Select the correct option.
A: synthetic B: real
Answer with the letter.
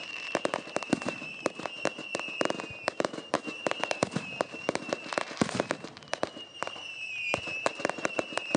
A